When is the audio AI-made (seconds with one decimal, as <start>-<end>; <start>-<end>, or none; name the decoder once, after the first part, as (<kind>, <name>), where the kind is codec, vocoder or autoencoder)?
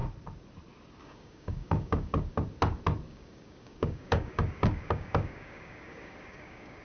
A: 1.0-2.3 (codec, DAC); 3.1-6.8